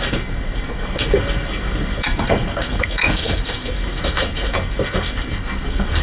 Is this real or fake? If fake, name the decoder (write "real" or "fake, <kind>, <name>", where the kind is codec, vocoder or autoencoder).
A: fake, codec, SNAC